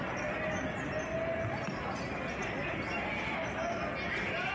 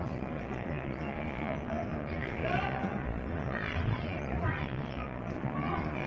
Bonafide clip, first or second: first